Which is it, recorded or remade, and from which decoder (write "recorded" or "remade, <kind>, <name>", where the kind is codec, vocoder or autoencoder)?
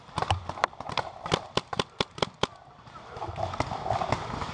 remade, vocoder, BigVGAN v2